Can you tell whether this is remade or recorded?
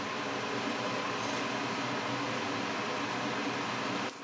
recorded